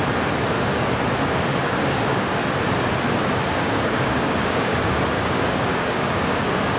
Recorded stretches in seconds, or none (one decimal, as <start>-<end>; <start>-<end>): 0.0-1.6; 2.4-3.5